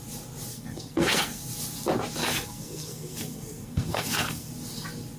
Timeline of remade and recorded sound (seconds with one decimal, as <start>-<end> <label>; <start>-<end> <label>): 0.0-0.5 recorded; 0.5-1.4 remade; 1.4-2.2 recorded; 2.2-4.5 remade; 4.5-5.2 recorded